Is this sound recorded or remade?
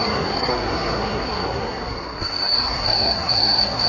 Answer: remade